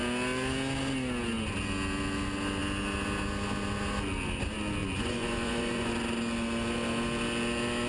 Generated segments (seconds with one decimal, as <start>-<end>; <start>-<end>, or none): 4.8-5.9